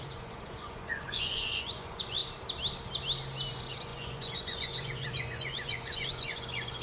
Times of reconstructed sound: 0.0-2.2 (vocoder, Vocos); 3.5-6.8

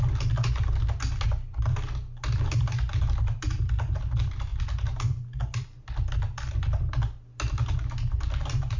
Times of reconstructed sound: none

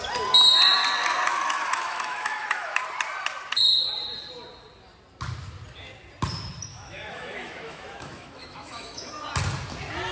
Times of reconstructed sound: 1.3-2.8 (autoencoder, DAC-VAE); 6.7-9.1